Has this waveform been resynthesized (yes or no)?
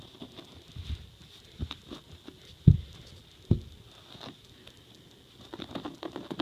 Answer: no